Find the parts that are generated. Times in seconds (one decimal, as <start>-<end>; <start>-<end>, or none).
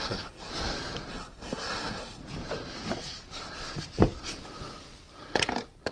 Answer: 0.0-0.5; 1.1-2.2